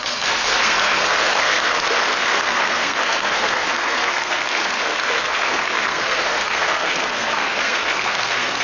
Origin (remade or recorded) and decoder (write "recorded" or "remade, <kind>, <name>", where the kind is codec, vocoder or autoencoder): remade, codec, SNAC